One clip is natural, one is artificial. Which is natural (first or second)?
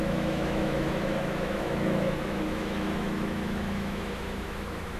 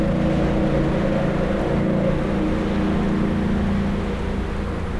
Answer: second